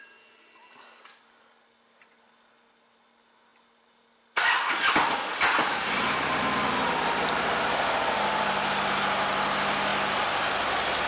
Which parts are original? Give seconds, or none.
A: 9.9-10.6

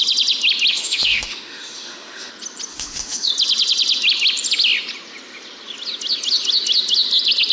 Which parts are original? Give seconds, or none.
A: 0.0-0.7; 2.3-2.7; 3.3-7.5

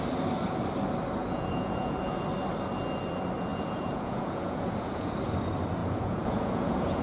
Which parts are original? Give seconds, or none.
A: 0.0-1.2; 2.2-3.5; 5.1-5.8